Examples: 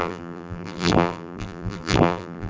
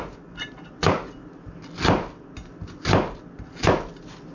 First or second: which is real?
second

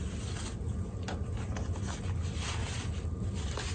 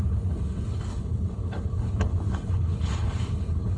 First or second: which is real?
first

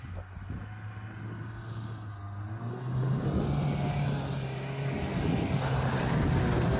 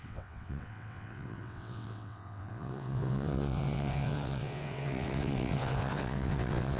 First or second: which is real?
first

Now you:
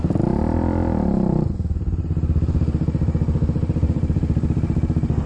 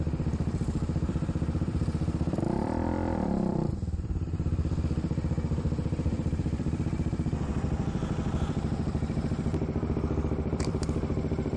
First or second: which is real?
first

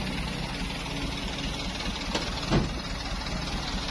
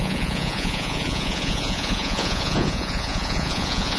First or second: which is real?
first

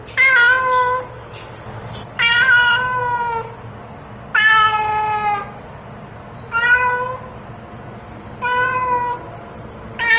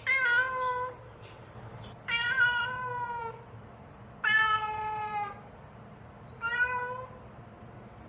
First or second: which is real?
first